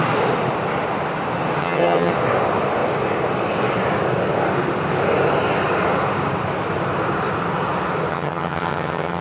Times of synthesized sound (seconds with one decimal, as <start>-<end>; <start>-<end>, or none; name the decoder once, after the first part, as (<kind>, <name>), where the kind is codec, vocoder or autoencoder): 1.6-2.1 (vocoder, HiFi-GAN); 8.1-9.2